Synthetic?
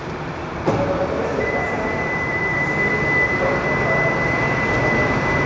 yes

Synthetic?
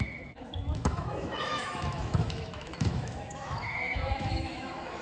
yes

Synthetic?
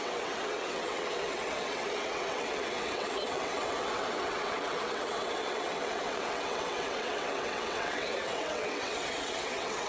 yes